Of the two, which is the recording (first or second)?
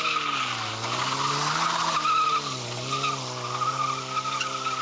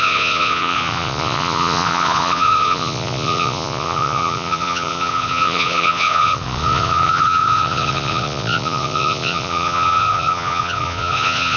first